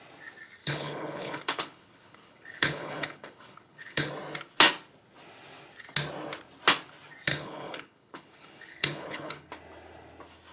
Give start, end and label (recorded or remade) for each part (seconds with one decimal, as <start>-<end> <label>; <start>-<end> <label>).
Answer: 0.0-0.6 recorded; 0.6-4.1 remade; 4.1-7.3 recorded; 7.3-9.5 remade; 9.5-10.5 recorded